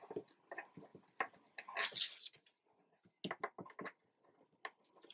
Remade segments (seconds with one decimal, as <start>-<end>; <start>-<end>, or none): none